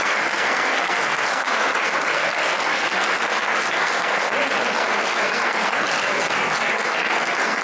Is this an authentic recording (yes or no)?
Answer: no